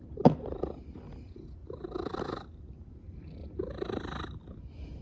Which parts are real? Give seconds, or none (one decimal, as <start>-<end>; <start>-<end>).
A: 0.0-5.0